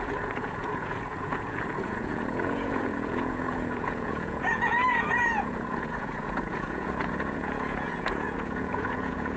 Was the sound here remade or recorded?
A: remade